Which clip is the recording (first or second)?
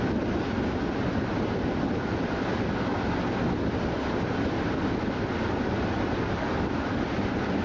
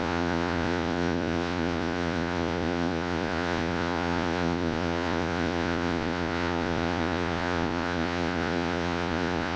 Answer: first